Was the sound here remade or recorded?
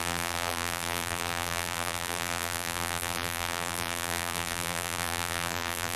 remade